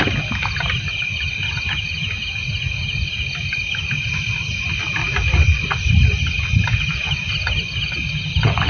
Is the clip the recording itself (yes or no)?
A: yes